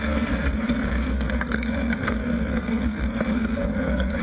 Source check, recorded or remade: remade